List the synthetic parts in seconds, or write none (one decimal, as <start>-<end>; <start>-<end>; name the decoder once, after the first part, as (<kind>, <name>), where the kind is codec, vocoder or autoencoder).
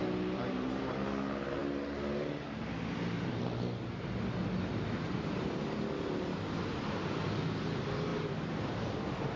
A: none